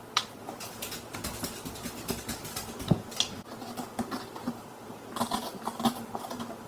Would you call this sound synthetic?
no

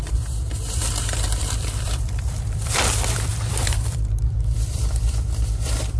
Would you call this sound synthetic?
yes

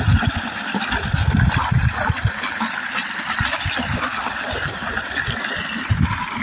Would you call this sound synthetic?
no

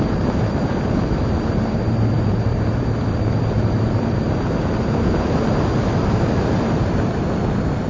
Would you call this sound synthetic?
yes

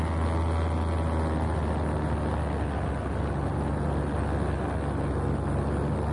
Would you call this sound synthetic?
no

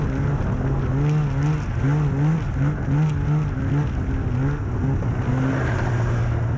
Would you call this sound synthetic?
no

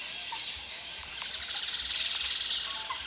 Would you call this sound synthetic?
no